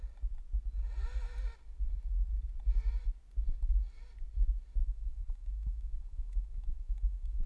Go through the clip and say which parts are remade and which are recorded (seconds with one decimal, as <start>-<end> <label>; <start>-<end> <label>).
0.0-4.8 recorded; 4.8-7.5 remade